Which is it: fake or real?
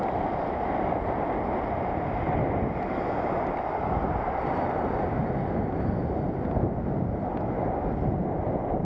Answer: real